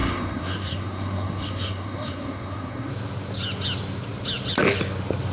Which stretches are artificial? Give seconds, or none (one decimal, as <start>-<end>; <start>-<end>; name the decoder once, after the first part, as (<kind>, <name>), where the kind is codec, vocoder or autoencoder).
0.0-2.9 (codec, SNAC)